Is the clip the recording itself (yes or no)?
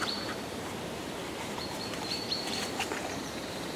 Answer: no